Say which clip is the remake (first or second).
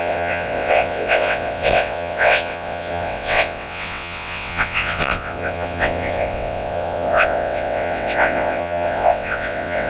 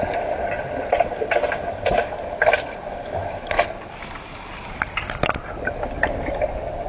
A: first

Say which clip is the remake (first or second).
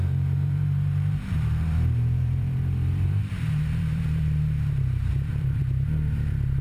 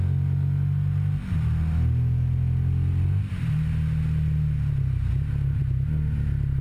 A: first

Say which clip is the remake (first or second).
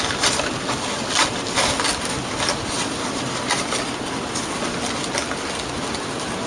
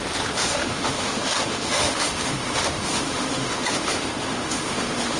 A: second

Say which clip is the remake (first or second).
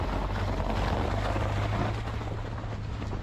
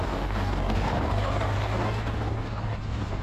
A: second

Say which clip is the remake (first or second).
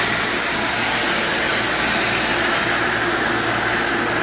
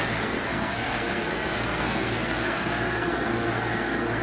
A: second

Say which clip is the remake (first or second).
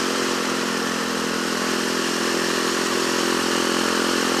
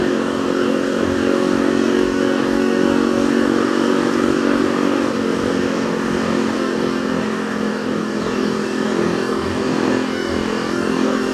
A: second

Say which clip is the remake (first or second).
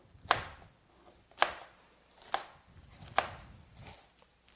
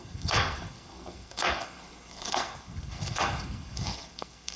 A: second